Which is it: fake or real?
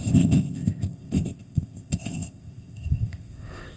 fake